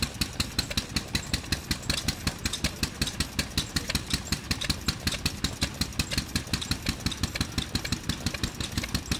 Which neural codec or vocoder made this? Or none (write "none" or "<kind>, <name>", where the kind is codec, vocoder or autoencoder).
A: none